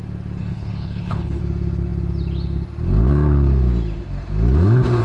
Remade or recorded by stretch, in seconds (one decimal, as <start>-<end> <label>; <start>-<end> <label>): 0.0-0.4 recorded; 0.4-1.4 remade; 1.4-5.0 recorded